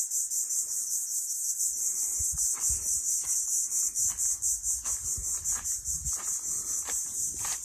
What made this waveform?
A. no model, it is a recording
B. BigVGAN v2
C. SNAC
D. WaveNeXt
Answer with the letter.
A